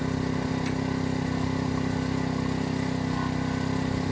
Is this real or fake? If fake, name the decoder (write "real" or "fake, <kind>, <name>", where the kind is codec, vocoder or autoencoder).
real